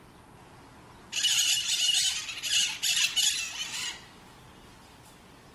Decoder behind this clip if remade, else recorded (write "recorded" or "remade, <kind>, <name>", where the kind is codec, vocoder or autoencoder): recorded